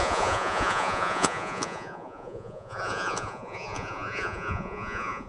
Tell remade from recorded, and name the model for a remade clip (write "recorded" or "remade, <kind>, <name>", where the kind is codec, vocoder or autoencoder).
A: remade, vocoder, Vocos